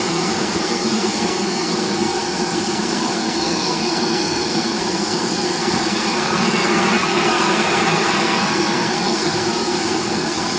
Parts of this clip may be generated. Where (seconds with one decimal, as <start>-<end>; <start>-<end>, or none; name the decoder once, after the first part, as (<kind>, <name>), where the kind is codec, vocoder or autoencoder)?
0.0-10.6 (codec, SNAC)